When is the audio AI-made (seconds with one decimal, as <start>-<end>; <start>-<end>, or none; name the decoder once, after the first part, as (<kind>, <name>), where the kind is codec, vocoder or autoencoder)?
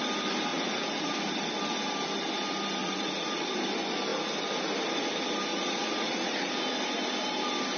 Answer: 0.5-1.1 (vocoder, Vocos); 2.8-3.5; 5.5-6.5